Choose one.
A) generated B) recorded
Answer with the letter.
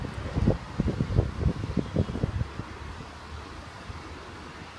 B